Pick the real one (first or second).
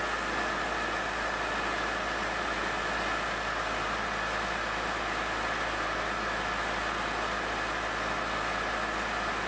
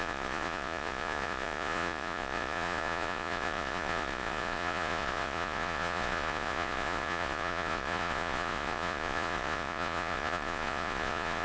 first